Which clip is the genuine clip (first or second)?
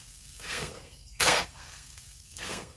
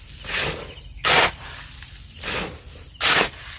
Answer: second